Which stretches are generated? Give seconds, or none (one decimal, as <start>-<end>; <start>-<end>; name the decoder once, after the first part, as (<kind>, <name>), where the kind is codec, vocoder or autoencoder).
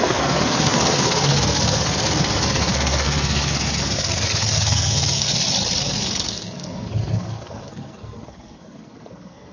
0.0-5.3 (codec, SNAC); 5.8-9.5